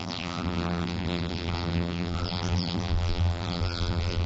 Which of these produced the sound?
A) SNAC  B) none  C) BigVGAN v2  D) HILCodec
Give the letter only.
C